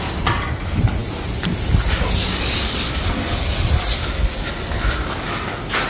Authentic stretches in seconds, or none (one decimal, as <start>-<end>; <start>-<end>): 0.0-5.9